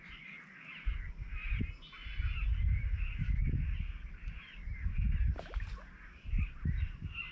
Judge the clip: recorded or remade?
recorded